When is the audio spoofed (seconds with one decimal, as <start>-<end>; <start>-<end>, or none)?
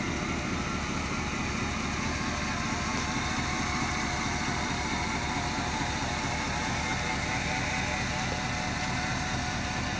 none